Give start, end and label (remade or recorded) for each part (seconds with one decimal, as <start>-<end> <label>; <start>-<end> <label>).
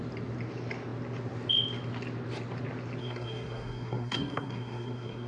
0.0-3.0 recorded; 3.0-5.3 remade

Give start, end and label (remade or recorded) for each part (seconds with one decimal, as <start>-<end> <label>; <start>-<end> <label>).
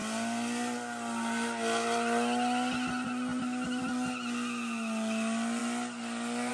0.0-6.5 recorded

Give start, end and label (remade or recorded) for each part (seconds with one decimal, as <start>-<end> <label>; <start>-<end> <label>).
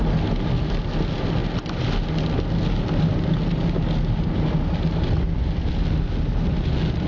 0.0-7.1 recorded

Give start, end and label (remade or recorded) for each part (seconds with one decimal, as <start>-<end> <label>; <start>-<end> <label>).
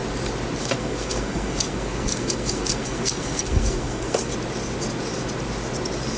0.0-0.6 recorded; 0.6-4.3 remade; 4.3-6.2 recorded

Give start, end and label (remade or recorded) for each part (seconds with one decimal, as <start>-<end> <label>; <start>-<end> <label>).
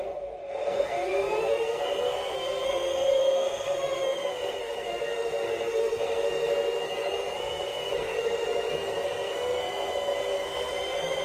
0.0-11.2 remade